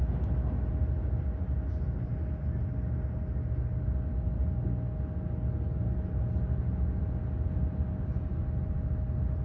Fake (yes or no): no